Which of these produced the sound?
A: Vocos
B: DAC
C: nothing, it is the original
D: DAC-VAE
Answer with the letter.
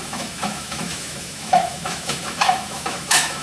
D